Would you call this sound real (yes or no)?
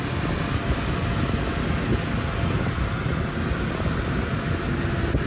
yes